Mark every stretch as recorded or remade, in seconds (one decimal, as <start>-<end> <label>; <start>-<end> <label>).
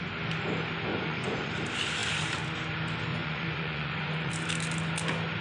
0.0-0.9 recorded; 0.9-1.5 remade; 1.5-3.1 recorded; 3.1-4.3 remade; 4.3-5.4 recorded